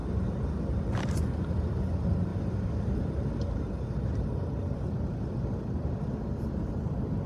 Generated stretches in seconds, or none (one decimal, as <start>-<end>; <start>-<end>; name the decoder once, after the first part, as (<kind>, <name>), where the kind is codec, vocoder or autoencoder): none